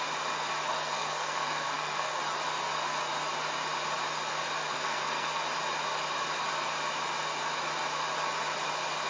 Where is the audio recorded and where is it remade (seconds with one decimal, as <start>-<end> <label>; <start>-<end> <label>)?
0.0-0.7 recorded; 0.7-2.2 remade; 2.2-4.7 recorded; 4.7-5.4 remade; 5.4-9.1 recorded

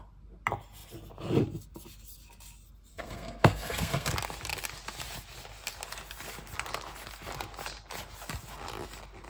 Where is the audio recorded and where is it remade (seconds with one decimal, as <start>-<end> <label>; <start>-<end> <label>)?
0.0-2.9 recorded; 2.9-4.1 remade; 4.1-9.3 recorded

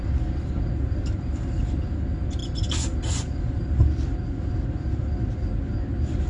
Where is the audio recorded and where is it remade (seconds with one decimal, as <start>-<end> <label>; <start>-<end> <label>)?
0.0-6.3 recorded

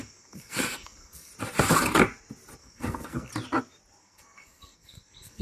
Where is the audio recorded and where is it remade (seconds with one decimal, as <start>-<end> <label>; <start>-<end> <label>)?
0.0-1.3 remade; 1.3-2.6 recorded; 2.6-3.3 remade; 3.3-4.0 recorded; 4.0-5.4 remade

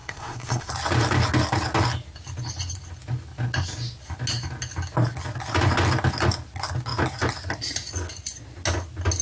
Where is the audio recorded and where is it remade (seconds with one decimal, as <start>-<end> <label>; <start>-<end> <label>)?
0.0-0.7 remade; 0.7-9.2 recorded

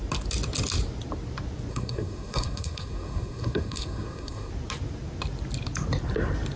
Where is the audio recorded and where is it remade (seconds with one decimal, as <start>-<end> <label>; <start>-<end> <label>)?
0.0-1.7 recorded; 1.7-4.5 remade; 4.5-6.6 recorded

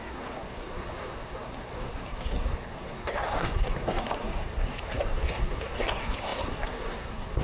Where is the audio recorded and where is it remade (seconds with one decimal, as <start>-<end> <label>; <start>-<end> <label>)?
0.0-7.4 remade

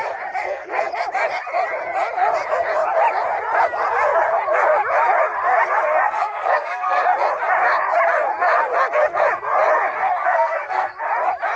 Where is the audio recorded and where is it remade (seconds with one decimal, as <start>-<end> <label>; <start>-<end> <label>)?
0.0-0.4 recorded; 0.4-0.9 remade; 0.9-6.0 recorded; 6.0-7.0 remade; 7.0-10.2 recorded; 10.2-11.0 remade; 11.0-11.6 recorded